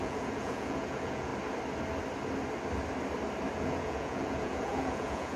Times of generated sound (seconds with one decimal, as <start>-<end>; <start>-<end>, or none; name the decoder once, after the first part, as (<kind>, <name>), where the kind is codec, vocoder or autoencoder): 0.0-1.3 (vocoder, Vocos); 3.5-5.4